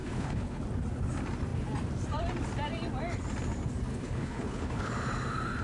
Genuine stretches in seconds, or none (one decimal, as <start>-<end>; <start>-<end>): 0.6-3.9; 4.9-5.6